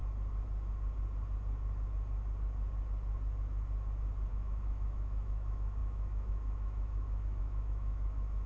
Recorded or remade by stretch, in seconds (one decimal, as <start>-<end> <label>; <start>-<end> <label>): 0.0-4.3 recorded; 4.3-8.5 remade